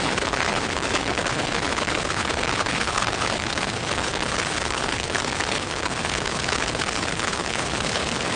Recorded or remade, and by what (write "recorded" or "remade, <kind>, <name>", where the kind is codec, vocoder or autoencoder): remade, codec, HILCodec